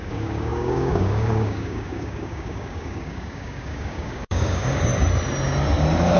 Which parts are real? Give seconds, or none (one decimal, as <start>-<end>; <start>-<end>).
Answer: 4.9-6.2